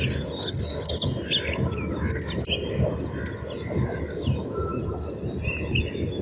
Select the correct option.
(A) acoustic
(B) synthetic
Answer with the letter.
A